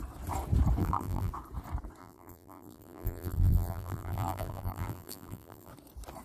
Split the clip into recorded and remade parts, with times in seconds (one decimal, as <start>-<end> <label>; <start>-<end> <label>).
0.0-0.8 recorded; 0.8-1.3 remade; 1.3-2.0 recorded; 2.0-5.7 remade; 5.7-6.2 recorded